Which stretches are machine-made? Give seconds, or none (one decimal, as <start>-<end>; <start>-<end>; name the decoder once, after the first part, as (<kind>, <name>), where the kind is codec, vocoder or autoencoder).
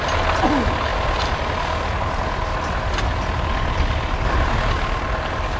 none